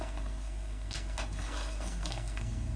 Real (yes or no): no